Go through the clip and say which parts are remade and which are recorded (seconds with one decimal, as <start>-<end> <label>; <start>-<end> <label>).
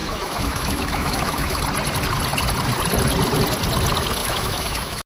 0.0-1.6 remade; 1.6-4.2 recorded; 4.2-5.1 remade